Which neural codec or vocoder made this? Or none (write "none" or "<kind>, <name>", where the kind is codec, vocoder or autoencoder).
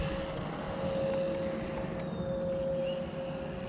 none